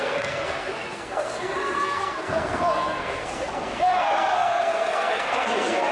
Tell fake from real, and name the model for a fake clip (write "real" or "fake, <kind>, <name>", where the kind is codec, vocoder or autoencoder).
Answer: fake, codec, SNAC